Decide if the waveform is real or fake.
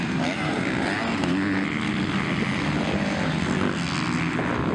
real